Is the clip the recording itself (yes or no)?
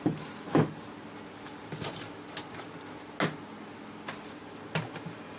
yes